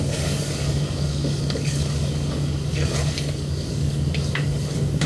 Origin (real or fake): fake